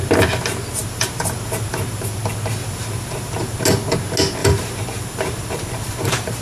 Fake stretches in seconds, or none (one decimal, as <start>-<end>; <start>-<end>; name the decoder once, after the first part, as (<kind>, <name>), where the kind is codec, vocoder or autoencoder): 0.8-2.2 (vocoder, BigVGAN v2); 2.6-3.6; 4.4-6.4